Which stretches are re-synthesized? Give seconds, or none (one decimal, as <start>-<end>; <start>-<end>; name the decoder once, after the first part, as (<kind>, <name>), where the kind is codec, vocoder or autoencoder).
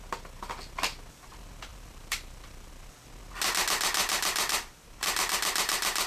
1.7-2.7 (vocoder, BigVGAN v2); 4.0-6.1